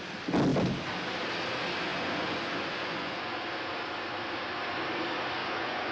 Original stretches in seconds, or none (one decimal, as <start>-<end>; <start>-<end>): 0.0-1.9; 3.3-5.4